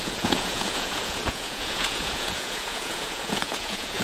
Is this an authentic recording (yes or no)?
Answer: no